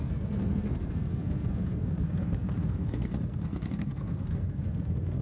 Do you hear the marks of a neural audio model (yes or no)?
yes